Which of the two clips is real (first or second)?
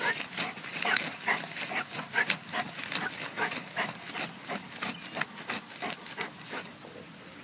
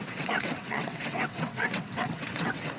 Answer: first